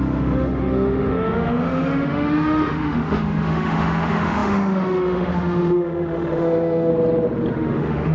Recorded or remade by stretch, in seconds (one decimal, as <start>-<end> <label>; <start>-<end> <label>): 0.0-6.9 remade; 6.9-7.5 recorded; 7.5-8.1 remade